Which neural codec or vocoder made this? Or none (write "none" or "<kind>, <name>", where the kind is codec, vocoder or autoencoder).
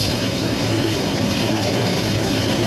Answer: codec, SNAC